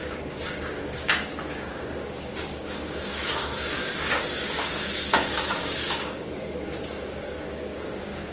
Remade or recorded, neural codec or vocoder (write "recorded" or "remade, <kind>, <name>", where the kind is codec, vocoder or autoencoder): remade, codec, DAC